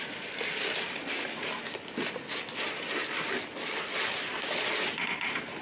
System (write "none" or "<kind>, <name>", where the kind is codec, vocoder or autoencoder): none